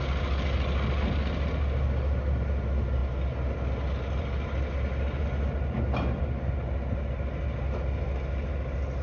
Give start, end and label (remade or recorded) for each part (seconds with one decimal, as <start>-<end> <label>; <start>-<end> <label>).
0.0-9.0 recorded